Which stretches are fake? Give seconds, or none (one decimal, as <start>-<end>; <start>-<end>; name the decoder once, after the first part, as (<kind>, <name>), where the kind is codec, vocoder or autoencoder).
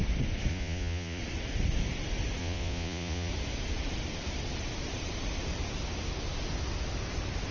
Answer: 0.5-1.2 (vocoder, Vocos); 2.4-3.3